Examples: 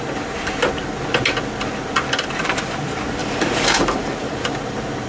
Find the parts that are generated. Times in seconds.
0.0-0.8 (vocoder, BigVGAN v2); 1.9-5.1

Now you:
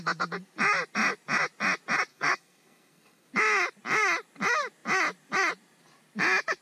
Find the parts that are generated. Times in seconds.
2.1-3.3 (codec, SNAC)

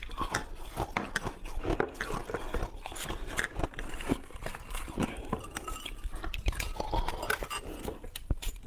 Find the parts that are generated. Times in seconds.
2.2-7.1 (vocoder, BigVGAN v2)

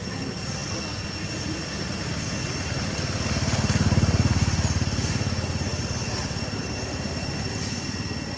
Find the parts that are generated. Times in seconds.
none

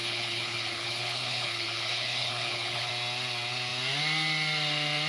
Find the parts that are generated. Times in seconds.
0.0-2.9 (codec, HILCodec)

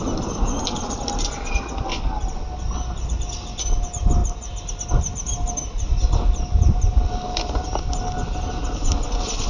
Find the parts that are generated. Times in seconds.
none